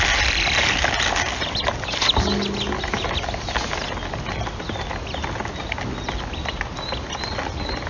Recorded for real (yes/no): yes